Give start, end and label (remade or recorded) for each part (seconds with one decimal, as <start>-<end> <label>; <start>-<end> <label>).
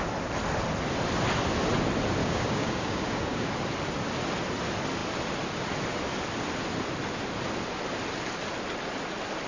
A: 0.0-2.2 recorded; 2.2-3.5 remade; 3.5-9.5 recorded